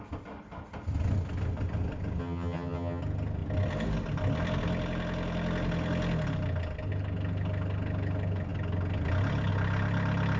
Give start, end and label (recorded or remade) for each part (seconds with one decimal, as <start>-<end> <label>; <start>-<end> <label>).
0.0-2.2 recorded; 2.2-3.0 remade; 3.0-10.4 recorded